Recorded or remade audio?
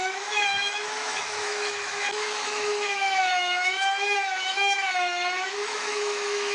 remade